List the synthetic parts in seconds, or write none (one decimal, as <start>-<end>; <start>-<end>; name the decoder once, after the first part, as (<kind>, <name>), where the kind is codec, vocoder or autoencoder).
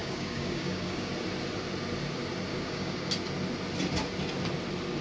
0.0-1.1 (codec, DAC); 2.5-3.1